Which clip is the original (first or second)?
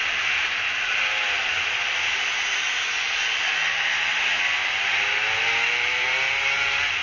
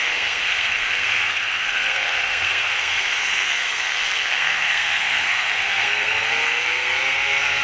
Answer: first